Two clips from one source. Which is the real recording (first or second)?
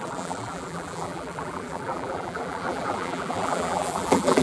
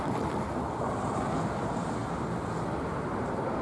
second